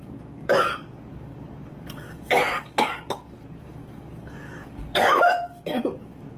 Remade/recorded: remade